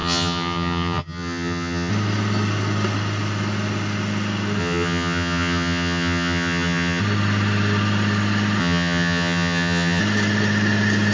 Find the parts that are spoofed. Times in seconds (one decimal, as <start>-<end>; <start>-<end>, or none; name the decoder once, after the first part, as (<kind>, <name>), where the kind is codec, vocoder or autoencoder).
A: 0.0-1.9 (vocoder, HiFi-GAN); 4.6-7.0; 8.6-10.0